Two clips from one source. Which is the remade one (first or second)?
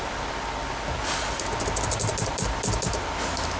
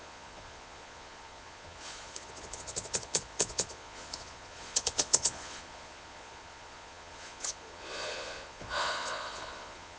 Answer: second